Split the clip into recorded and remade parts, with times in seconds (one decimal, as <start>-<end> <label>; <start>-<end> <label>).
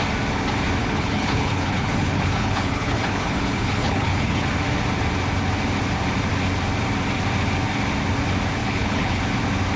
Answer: 0.0-0.8 recorded; 0.8-4.5 remade; 4.5-8.6 recorded; 8.6-9.2 remade; 9.2-9.8 recorded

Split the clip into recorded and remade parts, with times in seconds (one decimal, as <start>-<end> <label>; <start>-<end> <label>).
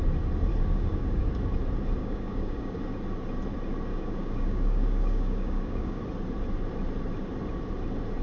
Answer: 0.0-0.5 recorded; 0.5-1.3 remade; 1.3-2.0 recorded; 2.0-2.8 remade; 2.8-3.9 recorded; 3.9-6.0 remade; 6.0-8.2 recorded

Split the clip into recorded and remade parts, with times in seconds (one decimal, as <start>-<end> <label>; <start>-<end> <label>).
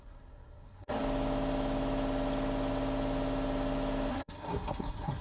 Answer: 0.0-1.0 remade; 1.0-4.1 recorded; 4.1-5.2 remade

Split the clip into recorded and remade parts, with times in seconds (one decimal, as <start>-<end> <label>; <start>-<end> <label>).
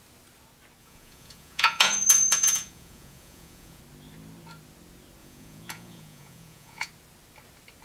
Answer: 0.0-0.8 recorded; 0.8-3.8 remade; 3.8-5.2 recorded; 5.2-6.9 remade; 6.9-7.8 recorded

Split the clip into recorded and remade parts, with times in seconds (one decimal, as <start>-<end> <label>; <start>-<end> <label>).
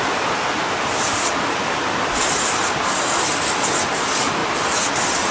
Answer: 0.0-5.3 recorded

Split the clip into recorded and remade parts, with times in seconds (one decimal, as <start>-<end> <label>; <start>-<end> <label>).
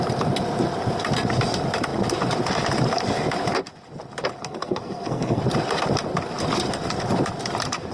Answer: 0.0-4.4 recorded; 4.4-5.4 remade; 5.4-7.9 recorded